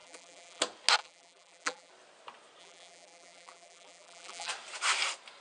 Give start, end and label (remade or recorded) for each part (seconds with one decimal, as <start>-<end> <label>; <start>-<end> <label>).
0.0-0.6 remade; 0.6-1.0 recorded; 1.0-1.9 remade; 1.9-2.6 recorded; 2.6-4.5 remade; 4.5-5.4 recorded